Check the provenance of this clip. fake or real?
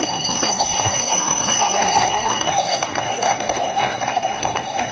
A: fake